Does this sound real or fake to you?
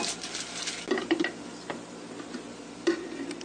real